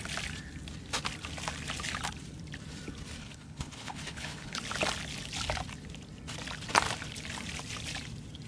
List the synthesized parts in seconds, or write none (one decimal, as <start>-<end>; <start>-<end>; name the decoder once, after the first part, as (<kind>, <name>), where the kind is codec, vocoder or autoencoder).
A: 3.2-4.6 (codec, HILCodec)